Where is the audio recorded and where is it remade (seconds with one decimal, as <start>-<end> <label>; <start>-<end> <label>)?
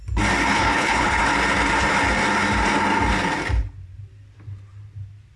0.0-0.5 recorded; 0.5-1.3 remade; 1.3-5.4 recorded